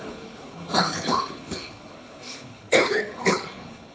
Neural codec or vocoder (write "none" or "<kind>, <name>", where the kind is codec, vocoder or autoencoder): codec, HILCodec